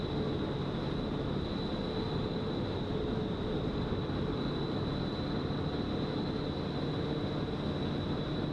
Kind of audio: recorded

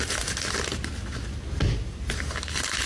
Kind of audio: recorded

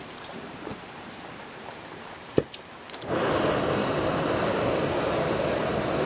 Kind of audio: remade